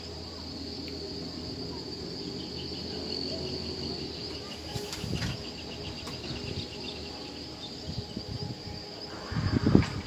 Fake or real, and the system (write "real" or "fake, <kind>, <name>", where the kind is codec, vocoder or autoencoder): real